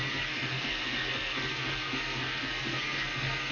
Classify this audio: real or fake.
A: fake